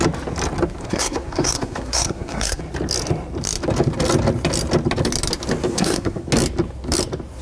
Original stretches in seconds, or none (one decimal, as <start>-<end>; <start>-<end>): 0.0-0.8; 2.6-5.7; 6.3-7.4